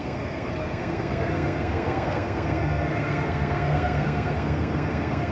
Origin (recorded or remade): remade